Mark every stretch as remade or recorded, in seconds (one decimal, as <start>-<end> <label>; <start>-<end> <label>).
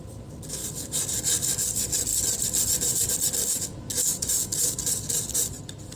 0.0-2.1 recorded; 2.1-3.1 remade; 3.1-4.5 recorded; 4.5-5.0 remade; 5.0-6.0 recorded